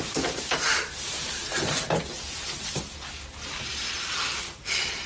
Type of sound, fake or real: real